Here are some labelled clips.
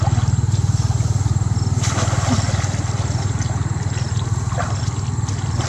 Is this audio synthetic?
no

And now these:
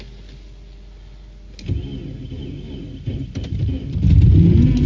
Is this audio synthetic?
no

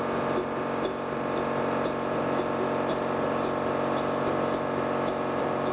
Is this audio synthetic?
no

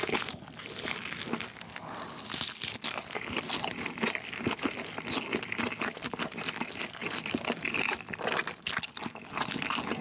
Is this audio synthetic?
no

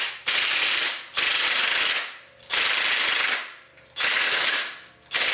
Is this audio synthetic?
no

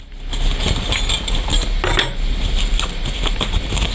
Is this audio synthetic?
no